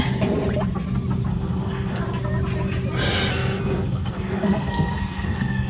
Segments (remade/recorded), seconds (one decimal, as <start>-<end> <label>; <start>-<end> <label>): 0.0-1.3 recorded; 1.3-2.0 remade; 2.0-3.3 recorded; 3.3-5.7 remade